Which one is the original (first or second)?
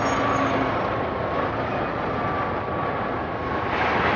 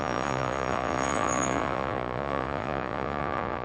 first